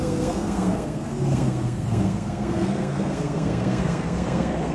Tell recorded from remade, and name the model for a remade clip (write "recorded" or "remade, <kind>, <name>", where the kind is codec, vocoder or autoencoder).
remade, codec, SNAC